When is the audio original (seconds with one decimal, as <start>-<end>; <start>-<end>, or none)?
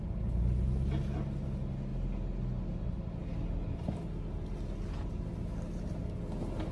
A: 0.0-6.7